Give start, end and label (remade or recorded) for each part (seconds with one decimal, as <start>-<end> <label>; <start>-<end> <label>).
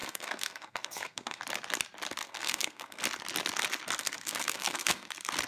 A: 0.0-1.4 remade; 1.4-2.2 recorded; 2.2-3.0 remade; 3.0-4.0 recorded; 4.0-5.1 remade; 5.1-5.5 recorded